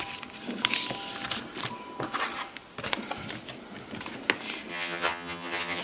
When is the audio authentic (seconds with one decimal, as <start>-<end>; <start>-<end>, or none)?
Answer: 0.0-4.7